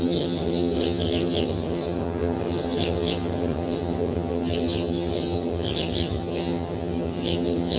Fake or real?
fake